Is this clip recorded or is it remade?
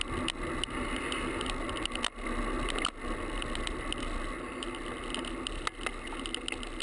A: recorded